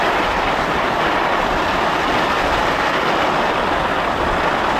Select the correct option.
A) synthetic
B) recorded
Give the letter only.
B